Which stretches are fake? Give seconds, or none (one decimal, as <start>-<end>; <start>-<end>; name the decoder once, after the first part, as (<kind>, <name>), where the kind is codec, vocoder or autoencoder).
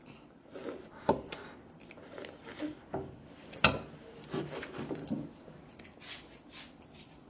none